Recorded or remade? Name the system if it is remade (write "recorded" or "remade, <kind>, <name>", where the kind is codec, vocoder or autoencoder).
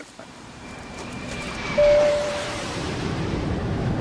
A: remade, vocoder, BigVGAN v2